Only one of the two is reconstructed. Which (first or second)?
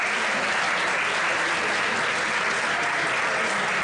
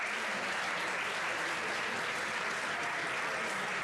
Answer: second